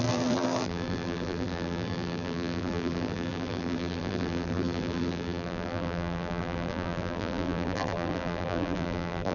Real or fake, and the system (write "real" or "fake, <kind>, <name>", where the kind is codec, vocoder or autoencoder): fake, vocoder, BigVGAN v2